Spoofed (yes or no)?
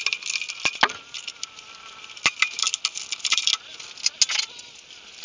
no